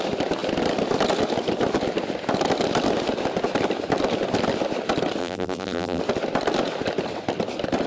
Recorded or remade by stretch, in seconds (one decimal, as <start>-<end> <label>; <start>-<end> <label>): 0.0-5.2 recorded; 5.2-6.0 remade; 6.0-7.9 recorded